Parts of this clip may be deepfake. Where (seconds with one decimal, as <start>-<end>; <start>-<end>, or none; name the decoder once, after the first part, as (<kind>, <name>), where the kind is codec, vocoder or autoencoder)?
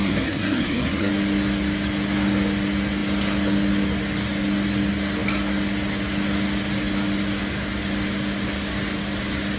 0.0-1.1 (codec, SNAC)